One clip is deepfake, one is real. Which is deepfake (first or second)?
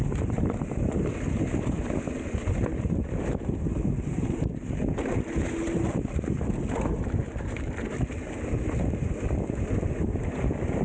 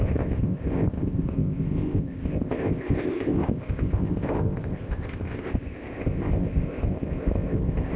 second